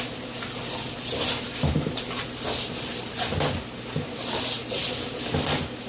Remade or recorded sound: recorded